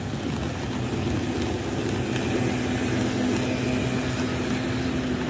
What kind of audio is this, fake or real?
real